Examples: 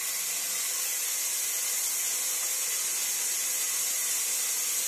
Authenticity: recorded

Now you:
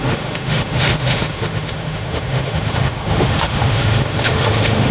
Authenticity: remade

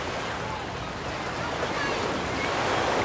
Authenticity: recorded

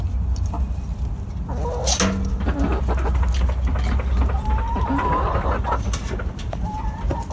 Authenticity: recorded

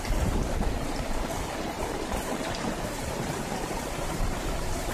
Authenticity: remade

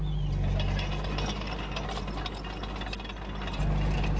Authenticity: recorded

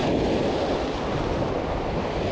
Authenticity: recorded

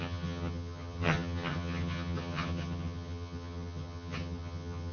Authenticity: remade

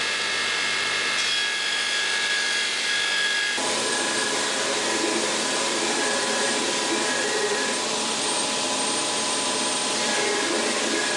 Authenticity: remade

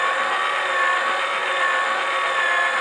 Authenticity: recorded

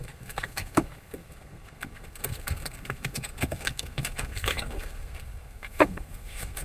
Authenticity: remade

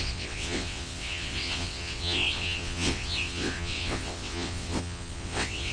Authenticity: remade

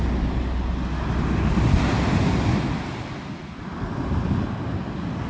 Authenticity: recorded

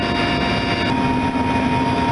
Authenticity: recorded